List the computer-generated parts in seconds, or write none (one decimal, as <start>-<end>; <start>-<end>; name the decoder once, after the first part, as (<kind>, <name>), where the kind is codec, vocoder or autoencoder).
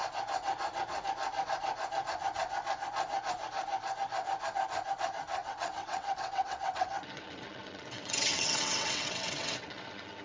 5.4-10.2 (vocoder, WaveNeXt)